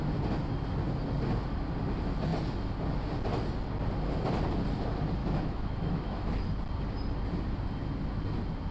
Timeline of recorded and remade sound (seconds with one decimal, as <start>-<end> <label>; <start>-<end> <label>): 0.0-5.2 recorded; 5.2-6.3 remade; 6.3-8.7 recorded